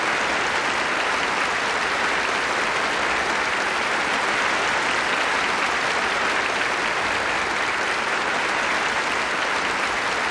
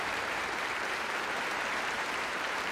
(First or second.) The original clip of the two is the first